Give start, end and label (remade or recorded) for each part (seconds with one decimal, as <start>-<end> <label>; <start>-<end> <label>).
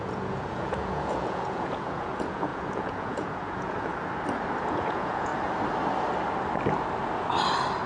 0.0-3.9 remade; 3.9-4.6 recorded; 4.6-5.3 remade; 5.3-7.9 recorded